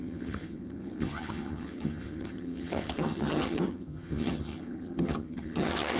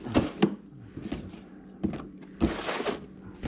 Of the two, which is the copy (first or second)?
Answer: first